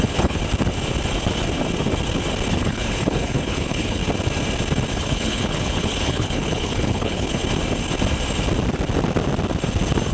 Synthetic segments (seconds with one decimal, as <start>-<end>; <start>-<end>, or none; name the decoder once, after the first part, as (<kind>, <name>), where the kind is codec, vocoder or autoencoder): 0.0-0.4 (codec, HILCodec); 2.5-4.0; 4.9-7.4